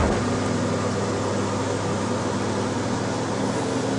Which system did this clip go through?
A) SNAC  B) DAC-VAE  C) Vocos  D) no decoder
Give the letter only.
D